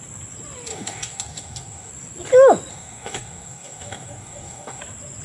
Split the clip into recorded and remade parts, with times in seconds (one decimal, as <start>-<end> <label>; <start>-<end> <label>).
0.0-0.7 recorded; 0.7-1.9 remade; 1.9-2.7 recorded; 2.7-4.8 remade; 4.8-5.2 recorded